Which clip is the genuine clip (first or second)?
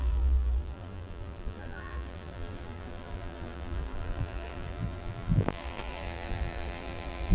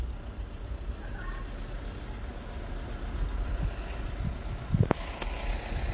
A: second